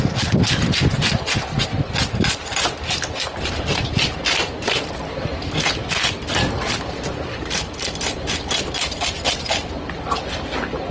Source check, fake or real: real